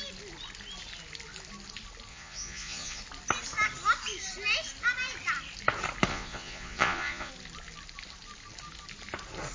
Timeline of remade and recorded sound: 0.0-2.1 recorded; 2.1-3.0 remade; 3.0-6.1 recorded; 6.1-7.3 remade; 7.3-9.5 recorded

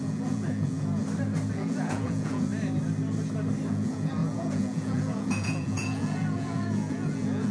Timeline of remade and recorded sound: 0.0-1.0 remade; 1.0-1.5 recorded; 1.5-2.5 remade; 2.5-3.7 recorded; 3.7-7.5 remade

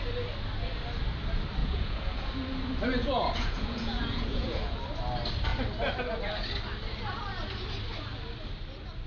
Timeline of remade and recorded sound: 0.0-1.6 recorded; 1.6-2.3 remade; 2.3-3.0 recorded; 3.0-4.8 remade; 4.8-9.1 recorded